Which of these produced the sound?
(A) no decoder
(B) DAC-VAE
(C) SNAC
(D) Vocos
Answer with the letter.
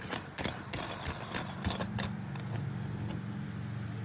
A